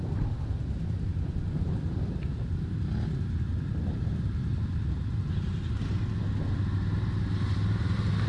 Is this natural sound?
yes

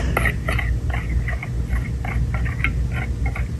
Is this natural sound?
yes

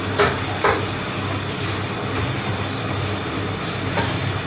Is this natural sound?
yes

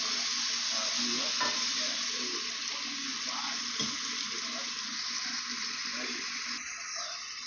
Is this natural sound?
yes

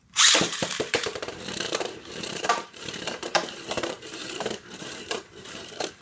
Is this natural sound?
no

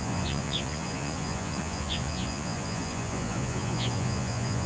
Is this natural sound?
no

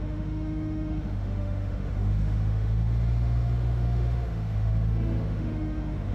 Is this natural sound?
no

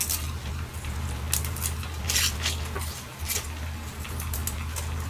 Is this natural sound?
yes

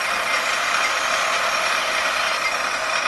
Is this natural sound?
yes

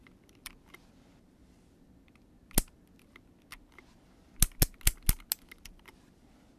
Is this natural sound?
yes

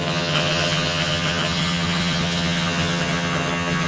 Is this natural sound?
no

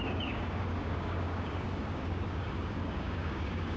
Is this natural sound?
no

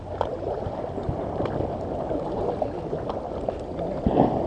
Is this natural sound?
yes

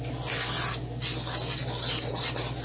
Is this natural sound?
yes